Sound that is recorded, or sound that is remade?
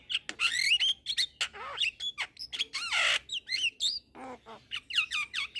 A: recorded